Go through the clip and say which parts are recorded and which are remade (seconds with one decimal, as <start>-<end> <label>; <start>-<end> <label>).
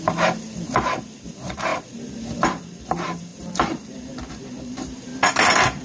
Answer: 0.0-5.1 remade; 5.1-5.8 recorded